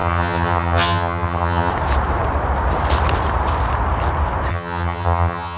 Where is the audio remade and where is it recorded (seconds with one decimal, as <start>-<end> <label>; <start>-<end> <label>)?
0.0-1.7 remade; 1.7-4.5 recorded; 4.5-5.6 remade